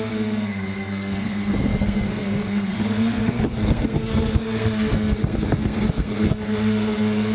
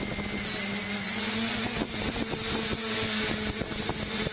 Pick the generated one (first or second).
first